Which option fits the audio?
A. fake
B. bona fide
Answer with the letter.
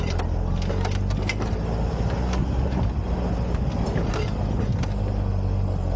B